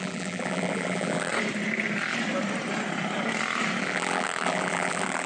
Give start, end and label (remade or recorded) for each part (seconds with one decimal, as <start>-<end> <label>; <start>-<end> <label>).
0.0-1.3 remade; 1.3-3.8 recorded; 3.8-5.3 remade